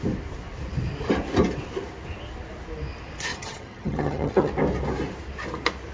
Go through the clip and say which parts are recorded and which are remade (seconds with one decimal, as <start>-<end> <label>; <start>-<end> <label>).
0.0-3.3 recorded; 3.3-4.5 remade; 4.5-5.9 recorded